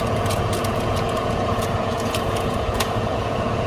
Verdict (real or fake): fake